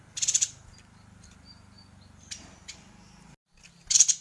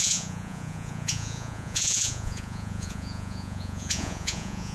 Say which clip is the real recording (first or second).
first